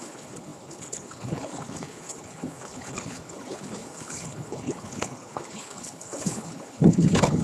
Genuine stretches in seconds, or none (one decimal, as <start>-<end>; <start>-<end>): none